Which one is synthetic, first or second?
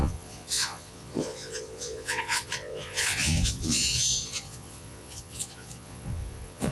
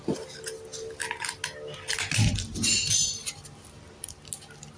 first